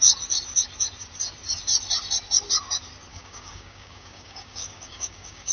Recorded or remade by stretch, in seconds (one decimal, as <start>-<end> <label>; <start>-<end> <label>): 0.0-3.1 recorded; 3.1-5.5 remade